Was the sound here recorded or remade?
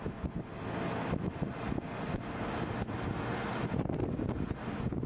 recorded